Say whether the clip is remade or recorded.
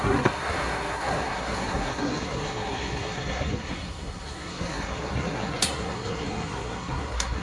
remade